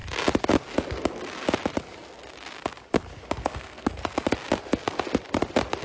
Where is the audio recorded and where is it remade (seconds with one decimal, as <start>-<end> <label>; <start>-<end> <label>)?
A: 0.0-3.4 recorded; 3.4-4.0 remade; 4.0-5.8 recorded